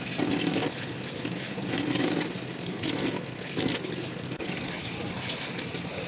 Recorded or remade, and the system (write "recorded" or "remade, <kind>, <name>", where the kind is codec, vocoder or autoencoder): recorded